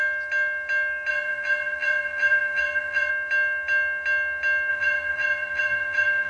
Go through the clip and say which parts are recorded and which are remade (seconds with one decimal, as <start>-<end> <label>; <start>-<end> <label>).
0.0-1.1 recorded; 1.1-3.1 remade; 3.1-4.7 recorded; 4.7-6.3 remade